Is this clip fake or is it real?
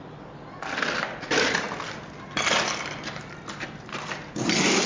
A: real